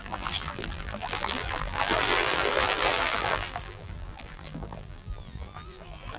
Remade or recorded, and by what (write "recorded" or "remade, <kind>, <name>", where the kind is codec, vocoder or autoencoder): remade, vocoder, BigVGAN v2